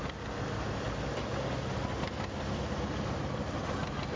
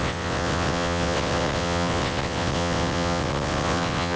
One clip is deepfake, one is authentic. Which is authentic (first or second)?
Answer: first